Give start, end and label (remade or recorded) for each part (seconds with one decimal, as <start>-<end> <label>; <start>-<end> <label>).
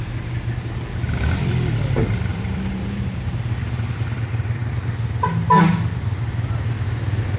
0.0-2.3 recorded; 2.3-3.6 remade; 3.6-7.4 recorded